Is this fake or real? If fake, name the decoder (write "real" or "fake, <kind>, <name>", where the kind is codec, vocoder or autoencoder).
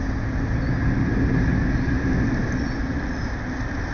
real